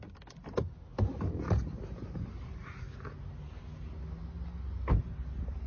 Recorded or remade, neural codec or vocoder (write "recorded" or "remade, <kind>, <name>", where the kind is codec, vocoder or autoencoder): recorded